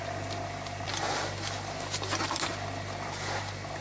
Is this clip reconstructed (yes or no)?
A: no